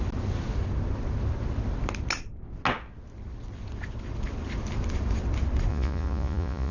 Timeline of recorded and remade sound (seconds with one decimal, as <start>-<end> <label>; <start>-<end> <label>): 0.0-5.7 recorded; 5.7-6.7 remade